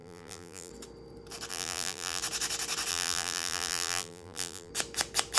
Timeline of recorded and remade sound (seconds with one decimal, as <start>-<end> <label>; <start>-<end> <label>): 0.0-0.7 remade; 0.7-1.5 recorded; 1.5-2.2 remade; 2.2-2.9 recorded; 2.9-4.7 remade; 4.7-5.4 recorded